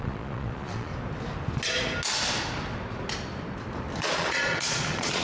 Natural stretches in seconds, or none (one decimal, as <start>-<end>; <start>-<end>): 0.9-4.0